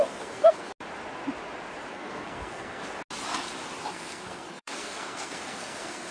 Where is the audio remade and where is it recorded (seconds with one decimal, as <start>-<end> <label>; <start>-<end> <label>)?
0.0-0.7 remade; 0.7-1.9 recorded; 1.9-2.8 remade; 2.8-3.9 recorded; 3.9-6.1 remade